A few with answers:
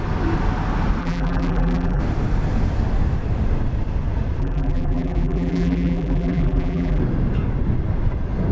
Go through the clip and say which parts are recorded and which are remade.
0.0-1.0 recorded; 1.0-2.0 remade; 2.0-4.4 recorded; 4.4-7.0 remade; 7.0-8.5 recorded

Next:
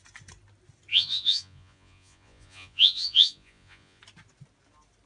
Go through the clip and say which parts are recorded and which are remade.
0.0-0.9 recorded; 0.9-4.0 remade; 4.0-5.1 recorded